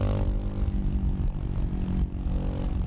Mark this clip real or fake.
real